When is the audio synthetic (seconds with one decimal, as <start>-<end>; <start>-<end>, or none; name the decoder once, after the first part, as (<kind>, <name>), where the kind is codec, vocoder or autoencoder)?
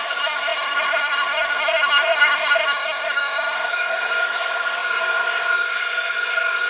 0.0-6.7 (codec, SNAC)